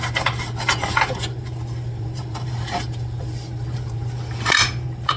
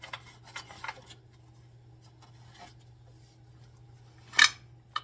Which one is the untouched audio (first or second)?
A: second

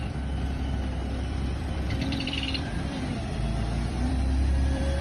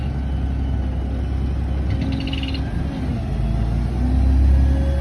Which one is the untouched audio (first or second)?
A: second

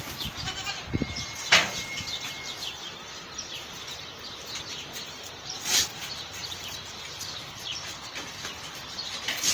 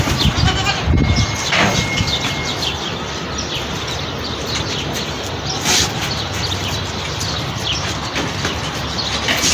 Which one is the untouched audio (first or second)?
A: second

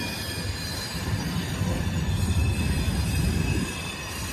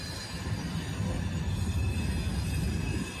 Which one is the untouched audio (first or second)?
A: second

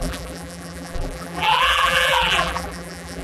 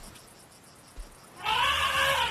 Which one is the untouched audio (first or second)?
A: second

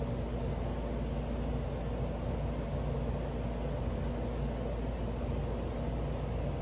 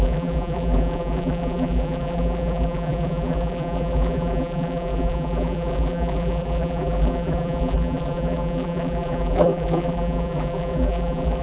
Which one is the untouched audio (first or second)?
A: first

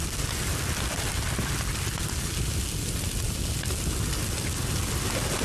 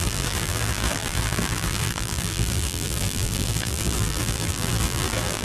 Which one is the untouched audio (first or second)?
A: first